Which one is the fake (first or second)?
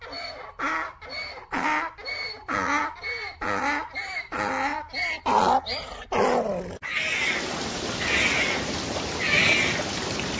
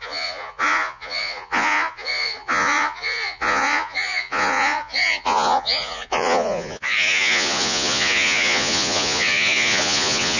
second